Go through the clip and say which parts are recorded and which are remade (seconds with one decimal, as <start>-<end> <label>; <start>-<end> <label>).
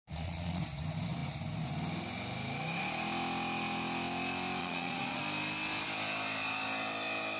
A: 0.0-0.6 remade; 0.6-4.6 recorded; 4.6-5.2 remade; 5.2-7.4 recorded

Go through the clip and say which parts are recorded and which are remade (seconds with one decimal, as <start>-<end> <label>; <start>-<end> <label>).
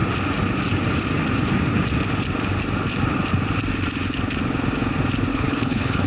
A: 0.0-5.3 recorded; 5.3-6.1 remade